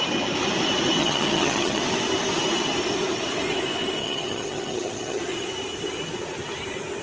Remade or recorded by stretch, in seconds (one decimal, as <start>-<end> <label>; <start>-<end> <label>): 0.0-1.0 recorded; 1.0-1.8 remade; 1.8-4.0 recorded; 4.0-5.2 remade; 5.2-7.0 recorded